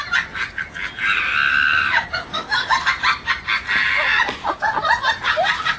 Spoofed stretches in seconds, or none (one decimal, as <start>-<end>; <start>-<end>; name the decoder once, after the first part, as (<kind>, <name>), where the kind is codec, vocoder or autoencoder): 1.5-2.9 (codec, DAC)